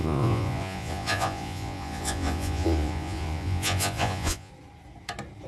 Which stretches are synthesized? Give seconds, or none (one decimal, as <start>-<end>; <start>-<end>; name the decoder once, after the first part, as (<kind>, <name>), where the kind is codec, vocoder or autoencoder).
0.0-4.5 (vocoder, Vocos)